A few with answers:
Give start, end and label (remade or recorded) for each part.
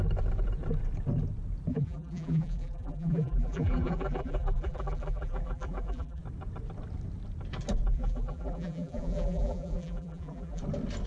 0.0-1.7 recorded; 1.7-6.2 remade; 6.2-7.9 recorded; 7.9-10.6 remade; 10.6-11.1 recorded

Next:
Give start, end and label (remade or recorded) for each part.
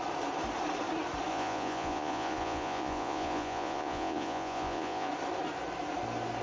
0.0-1.3 recorded; 1.3-5.1 remade; 5.1-6.4 recorded